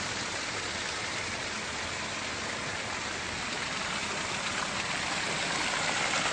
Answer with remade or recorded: recorded